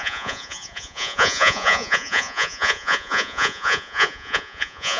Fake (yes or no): yes